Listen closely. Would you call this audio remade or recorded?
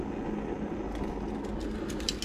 recorded